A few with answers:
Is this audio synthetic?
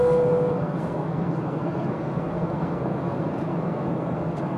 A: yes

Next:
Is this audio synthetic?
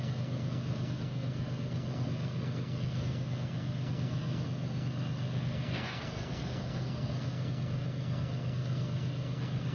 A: yes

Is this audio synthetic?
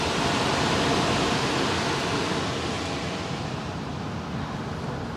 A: no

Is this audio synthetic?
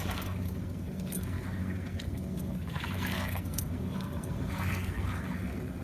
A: yes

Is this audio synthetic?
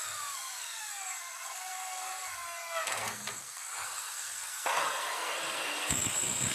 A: yes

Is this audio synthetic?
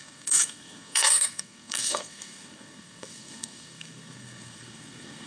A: yes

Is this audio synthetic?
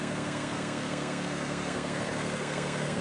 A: yes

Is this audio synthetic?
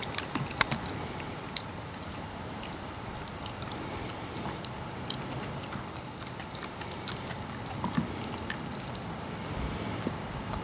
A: no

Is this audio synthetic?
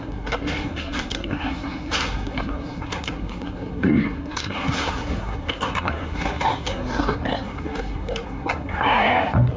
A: yes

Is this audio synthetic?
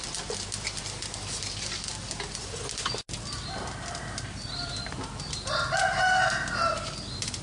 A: no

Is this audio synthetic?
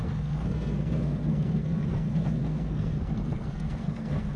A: yes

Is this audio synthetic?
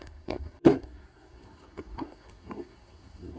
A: yes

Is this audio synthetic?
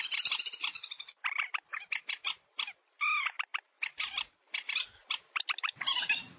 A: no